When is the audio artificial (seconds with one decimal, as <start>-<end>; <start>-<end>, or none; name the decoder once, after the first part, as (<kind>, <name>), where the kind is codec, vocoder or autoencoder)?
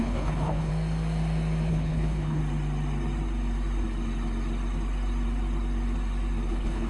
0.0-0.7 (codec, HILCodec); 1.7-2.4; 6.5-6.9